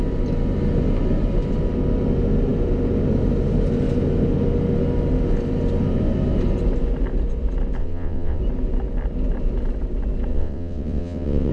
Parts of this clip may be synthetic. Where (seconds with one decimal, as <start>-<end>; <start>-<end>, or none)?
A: 7.8-8.4; 10.3-11.5